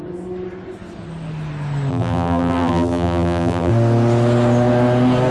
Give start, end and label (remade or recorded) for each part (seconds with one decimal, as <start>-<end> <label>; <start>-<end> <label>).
0.0-1.9 recorded; 1.9-3.7 remade; 3.7-5.3 recorded